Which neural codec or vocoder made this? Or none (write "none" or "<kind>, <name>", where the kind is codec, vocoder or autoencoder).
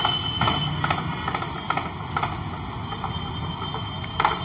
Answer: none